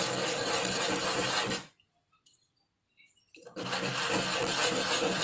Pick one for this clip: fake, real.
real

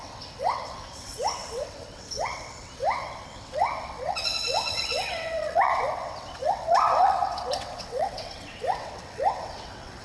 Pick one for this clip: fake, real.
fake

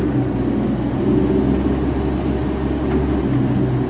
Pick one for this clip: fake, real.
real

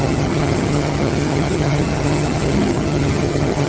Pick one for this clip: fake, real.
fake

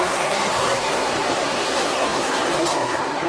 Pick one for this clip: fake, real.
fake